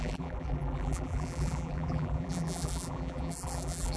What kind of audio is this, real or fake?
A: fake